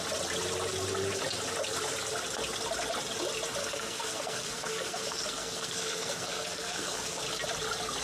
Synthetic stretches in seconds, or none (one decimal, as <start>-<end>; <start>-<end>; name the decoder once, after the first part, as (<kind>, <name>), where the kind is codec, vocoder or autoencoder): 3.6-7.2 (codec, SNAC)